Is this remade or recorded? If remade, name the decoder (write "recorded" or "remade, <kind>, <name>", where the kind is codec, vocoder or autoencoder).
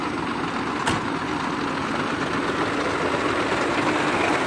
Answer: recorded